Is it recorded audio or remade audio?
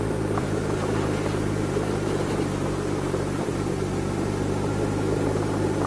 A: remade